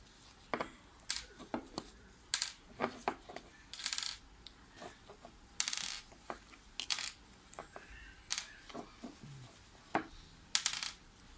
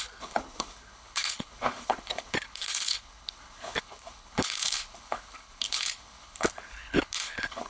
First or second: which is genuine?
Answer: first